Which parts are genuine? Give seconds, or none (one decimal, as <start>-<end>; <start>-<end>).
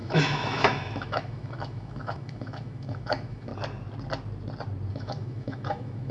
3.5-4.9